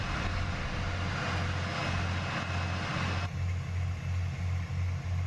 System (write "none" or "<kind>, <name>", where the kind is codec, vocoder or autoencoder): none